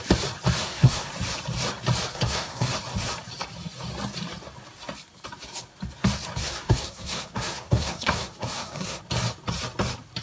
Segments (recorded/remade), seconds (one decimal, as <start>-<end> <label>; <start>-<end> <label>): 0.0-0.6 recorded; 0.6-1.1 remade; 1.1-2.1 recorded; 2.1-2.7 remade; 2.7-6.4 recorded; 6.4-9.0 remade; 9.0-10.2 recorded